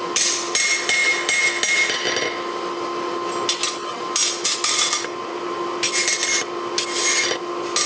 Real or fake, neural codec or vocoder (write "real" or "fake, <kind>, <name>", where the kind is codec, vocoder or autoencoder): real